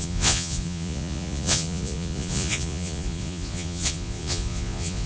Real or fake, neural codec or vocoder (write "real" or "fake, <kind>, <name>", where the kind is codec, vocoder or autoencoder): fake, vocoder, Vocos